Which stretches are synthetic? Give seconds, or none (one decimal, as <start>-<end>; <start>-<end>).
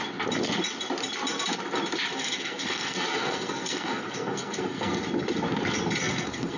2.1-5.0; 6.0-6.6